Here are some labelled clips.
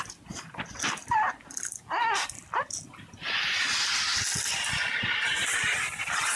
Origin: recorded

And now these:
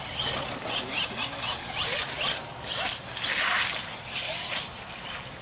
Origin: recorded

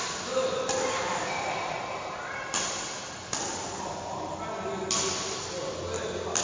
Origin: recorded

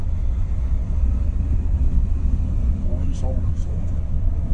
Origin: recorded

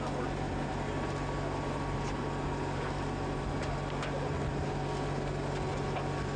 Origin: recorded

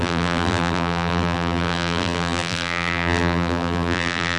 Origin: remade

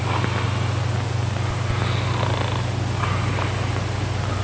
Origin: recorded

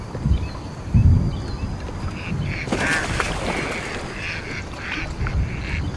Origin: recorded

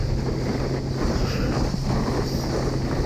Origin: recorded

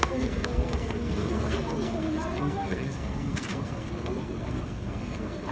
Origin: remade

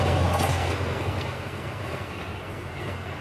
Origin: remade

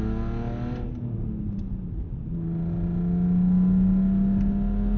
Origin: recorded